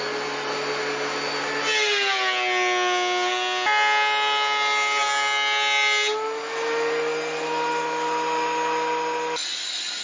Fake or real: real